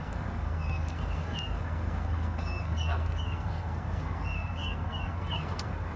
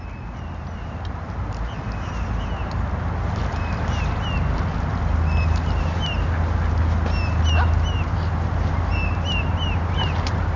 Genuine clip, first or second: second